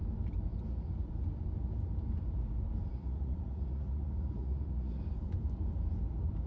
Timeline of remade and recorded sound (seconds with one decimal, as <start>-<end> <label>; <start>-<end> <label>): 0.0-2.9 recorded; 2.9-5.0 remade; 5.0-6.5 recorded